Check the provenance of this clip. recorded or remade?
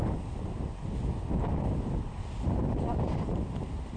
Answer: recorded